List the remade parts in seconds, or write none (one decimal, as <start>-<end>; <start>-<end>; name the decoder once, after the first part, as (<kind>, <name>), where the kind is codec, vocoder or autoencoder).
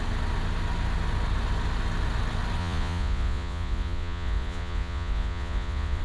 2.6-6.0 (vocoder, Vocos)